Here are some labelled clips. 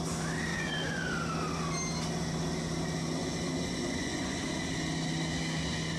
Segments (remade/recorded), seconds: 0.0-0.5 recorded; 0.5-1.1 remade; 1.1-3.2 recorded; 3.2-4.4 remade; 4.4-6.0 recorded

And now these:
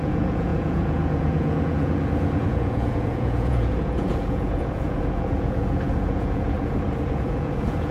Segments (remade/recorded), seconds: 0.0-7.9 remade

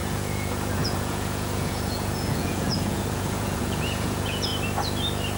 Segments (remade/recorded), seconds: 0.0-4.5 remade; 4.5-5.4 recorded